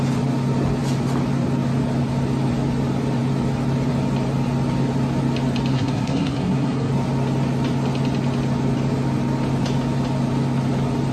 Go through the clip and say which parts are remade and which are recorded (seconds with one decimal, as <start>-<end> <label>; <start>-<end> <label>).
0.0-5.7 recorded; 5.7-6.9 remade; 6.9-11.1 recorded

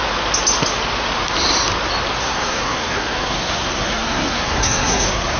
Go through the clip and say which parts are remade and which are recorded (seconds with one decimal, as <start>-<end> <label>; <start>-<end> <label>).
0.0-2.2 recorded; 2.2-5.4 remade